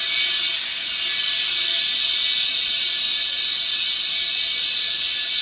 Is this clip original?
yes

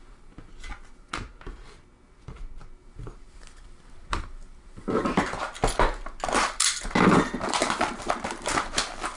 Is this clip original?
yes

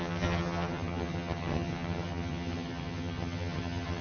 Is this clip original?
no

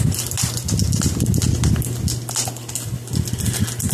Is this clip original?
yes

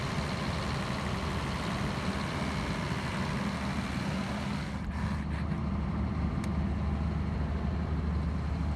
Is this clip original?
yes